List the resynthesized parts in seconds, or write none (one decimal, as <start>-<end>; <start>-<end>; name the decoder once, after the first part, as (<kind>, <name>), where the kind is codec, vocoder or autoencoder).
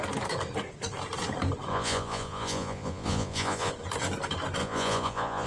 1.7-3.7 (vocoder, Vocos); 4.6-5.5